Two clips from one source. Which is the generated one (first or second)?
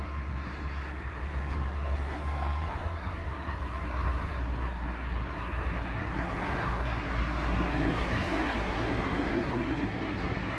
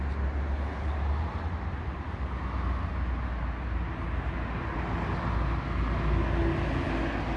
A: first